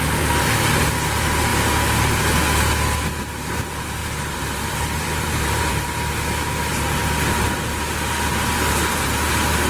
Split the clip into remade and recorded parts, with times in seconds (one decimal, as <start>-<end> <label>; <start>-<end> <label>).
0.0-4.0 recorded; 4.0-6.1 remade; 6.1-9.7 recorded